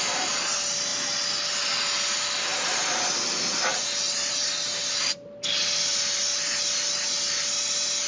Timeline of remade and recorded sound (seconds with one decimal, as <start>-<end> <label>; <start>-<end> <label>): 0.0-8.1 recorded